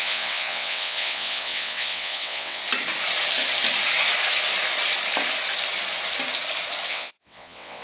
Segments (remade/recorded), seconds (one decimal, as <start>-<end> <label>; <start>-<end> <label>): 0.0-2.6 remade; 2.6-6.9 recorded; 6.9-7.8 remade